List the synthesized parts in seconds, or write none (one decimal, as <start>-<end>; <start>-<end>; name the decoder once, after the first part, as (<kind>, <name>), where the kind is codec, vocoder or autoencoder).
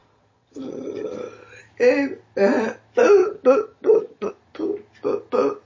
0.0-1.1 (vocoder, HiFi-GAN); 3.2-4.3